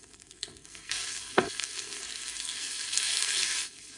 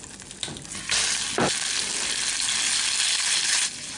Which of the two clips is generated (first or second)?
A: first